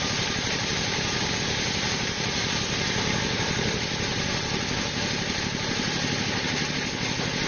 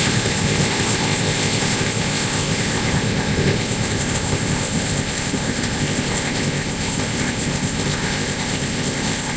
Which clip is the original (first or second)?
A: first